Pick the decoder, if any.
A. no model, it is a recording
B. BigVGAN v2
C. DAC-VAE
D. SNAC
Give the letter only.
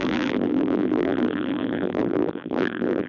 B